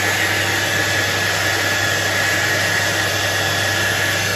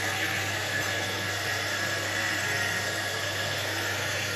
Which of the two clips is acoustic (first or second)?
first